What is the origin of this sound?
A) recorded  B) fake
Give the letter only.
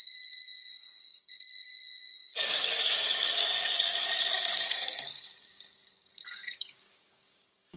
B